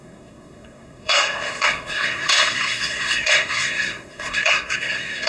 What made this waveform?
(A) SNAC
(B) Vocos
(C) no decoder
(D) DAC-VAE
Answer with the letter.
A